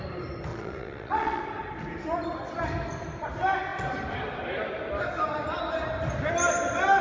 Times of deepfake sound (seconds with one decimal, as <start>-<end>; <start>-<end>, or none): 0.5-1.4